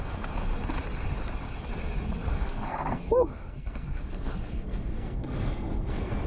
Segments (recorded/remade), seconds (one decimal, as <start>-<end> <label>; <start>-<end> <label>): 0.0-0.5 remade; 0.5-2.3 recorded; 2.3-6.3 remade